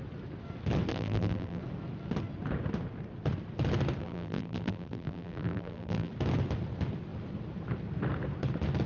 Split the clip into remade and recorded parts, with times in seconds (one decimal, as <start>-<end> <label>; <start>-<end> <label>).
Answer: 0.0-0.9 recorded; 0.9-1.6 remade; 1.6-4.0 recorded; 4.0-6.1 remade; 6.1-8.9 recorded